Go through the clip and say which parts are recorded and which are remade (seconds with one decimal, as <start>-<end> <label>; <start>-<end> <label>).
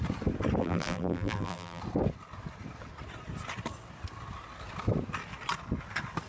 0.0-0.6 recorded; 0.6-1.8 remade; 1.8-6.3 recorded